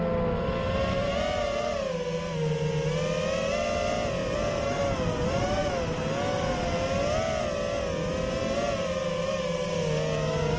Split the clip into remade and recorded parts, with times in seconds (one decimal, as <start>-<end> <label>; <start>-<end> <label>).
0.0-10.6 recorded